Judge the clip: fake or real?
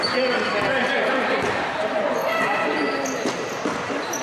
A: real